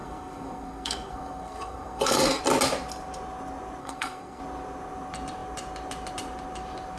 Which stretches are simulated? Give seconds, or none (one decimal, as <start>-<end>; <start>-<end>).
0.0-2.4; 3.8-4.4